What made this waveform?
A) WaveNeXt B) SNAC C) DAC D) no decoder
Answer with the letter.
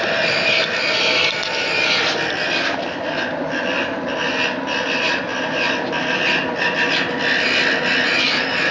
D